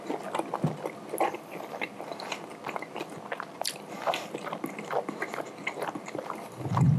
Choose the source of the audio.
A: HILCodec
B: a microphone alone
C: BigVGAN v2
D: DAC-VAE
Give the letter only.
B